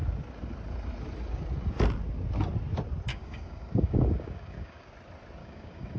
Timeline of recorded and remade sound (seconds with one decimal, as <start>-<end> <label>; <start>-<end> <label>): 0.0-3.1 recorded; 3.1-4.9 remade; 4.9-5.4 recorded; 5.4-6.0 remade